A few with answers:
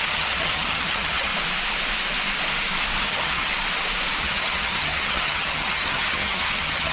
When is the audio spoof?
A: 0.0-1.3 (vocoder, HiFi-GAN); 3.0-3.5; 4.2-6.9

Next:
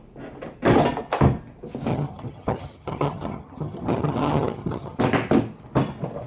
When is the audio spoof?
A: 1.9-5.0 (vocoder, HiFi-GAN)

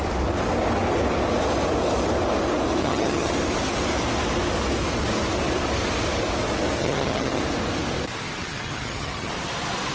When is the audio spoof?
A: 2.8-3.3 (vocoder, HiFi-GAN); 6.8-7.4; 8.4-9.3

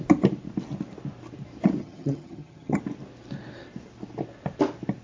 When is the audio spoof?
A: 1.8-2.8 (vocoder, HiFi-GAN)

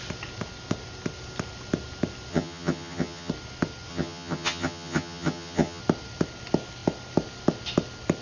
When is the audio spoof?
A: 2.3-3.3 (vocoder, HiFi-GAN); 3.9-5.8

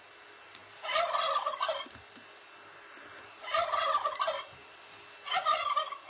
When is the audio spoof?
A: none

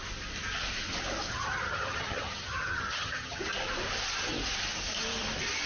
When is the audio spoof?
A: 1.3-3.4 (vocoder, HiFi-GAN)

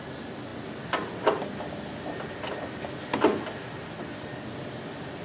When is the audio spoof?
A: none